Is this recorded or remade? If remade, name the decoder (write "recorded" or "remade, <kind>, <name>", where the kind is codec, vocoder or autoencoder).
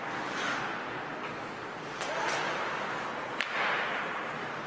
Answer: recorded